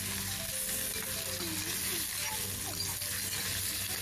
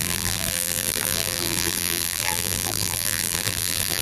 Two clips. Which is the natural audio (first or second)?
first